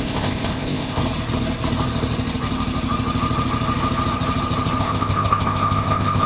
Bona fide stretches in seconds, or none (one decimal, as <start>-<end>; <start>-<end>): 1.0-4.8